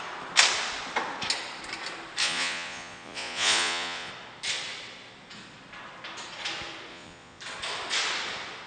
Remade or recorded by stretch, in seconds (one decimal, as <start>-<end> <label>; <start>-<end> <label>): 0.0-2.2 recorded; 2.2-4.1 remade; 4.1-6.9 recorded; 6.9-7.4 remade; 7.4-8.7 recorded